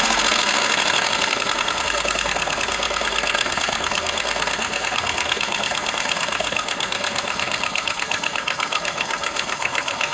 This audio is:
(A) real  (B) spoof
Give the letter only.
B